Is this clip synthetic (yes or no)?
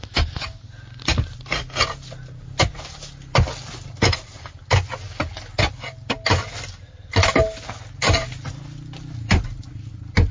no